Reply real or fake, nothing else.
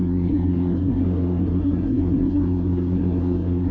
fake